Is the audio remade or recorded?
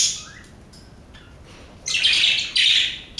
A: recorded